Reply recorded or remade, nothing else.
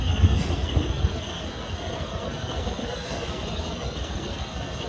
remade